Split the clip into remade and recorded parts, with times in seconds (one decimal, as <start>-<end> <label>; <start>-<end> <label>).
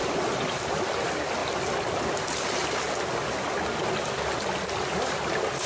0.0-5.7 recorded